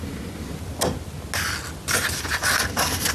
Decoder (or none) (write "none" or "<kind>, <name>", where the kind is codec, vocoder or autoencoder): none